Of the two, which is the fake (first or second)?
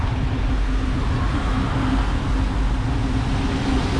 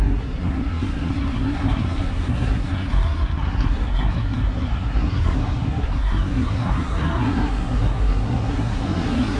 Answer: second